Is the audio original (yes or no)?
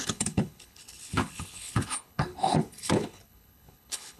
no